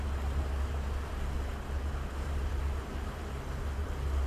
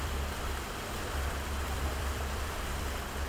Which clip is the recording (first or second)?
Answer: first